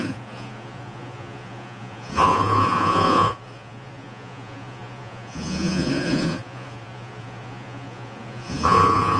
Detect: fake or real fake